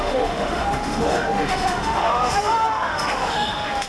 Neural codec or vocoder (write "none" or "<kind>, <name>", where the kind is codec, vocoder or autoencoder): autoencoder, DAC-VAE